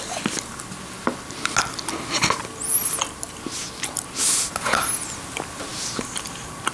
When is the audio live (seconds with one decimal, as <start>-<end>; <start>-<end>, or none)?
0.0-6.7